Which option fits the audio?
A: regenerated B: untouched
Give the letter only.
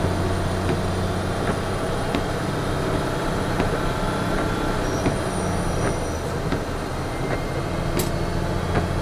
B